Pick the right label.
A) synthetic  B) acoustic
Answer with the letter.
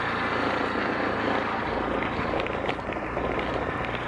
B